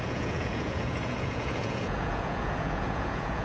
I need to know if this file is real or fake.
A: fake